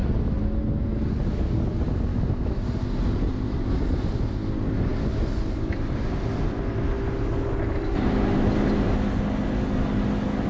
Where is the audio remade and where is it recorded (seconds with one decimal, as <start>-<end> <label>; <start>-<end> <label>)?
0.0-2.1 recorded; 2.1-2.6 remade; 2.6-10.5 recorded